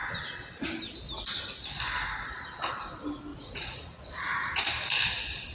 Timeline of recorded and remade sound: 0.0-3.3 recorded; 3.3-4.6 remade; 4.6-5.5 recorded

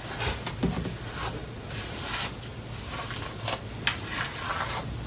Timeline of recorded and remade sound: 0.0-1.4 recorded; 1.4-2.0 remade; 2.0-5.1 recorded

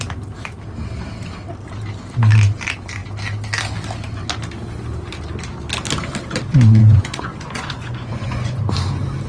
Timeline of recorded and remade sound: 0.0-6.8 recorded; 6.8-8.6 remade; 8.6-9.3 recorded

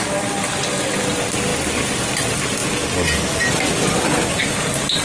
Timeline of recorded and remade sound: 0.0-5.0 recorded

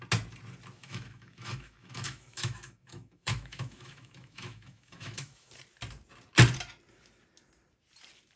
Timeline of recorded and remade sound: 0.0-0.8 recorded; 0.8-5.5 remade; 5.5-8.4 recorded

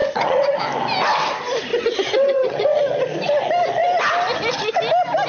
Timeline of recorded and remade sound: 0.0-0.6 remade; 0.6-1.7 recorded; 1.7-2.8 remade; 2.8-5.3 recorded

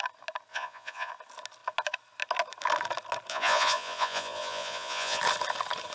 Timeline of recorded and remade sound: 0.0-0.5 recorded; 0.5-1.1 remade; 1.1-3.3 recorded; 3.3-5.2 remade; 5.2-5.9 recorded

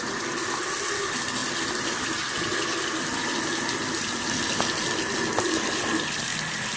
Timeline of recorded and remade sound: 0.0-6.8 recorded